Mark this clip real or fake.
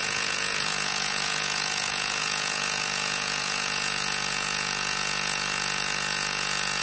fake